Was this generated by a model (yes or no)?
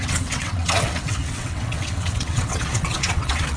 yes